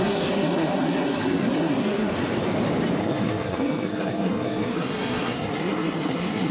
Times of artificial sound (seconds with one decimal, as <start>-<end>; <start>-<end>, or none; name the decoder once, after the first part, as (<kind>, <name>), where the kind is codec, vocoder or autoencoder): 0.0-2.1 (codec, SNAC); 3.0-6.5